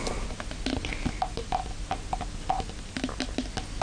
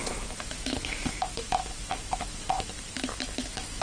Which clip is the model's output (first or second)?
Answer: second